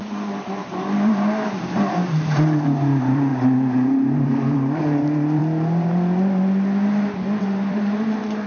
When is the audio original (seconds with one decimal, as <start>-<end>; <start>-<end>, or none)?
5.4-7.4